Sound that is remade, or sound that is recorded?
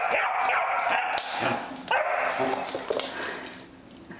recorded